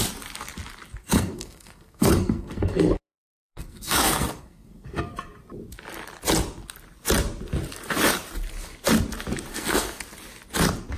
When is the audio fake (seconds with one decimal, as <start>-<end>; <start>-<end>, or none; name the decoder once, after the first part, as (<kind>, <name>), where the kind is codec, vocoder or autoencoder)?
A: 1.0-5.0 (codec, SNAC); 9.5-10.0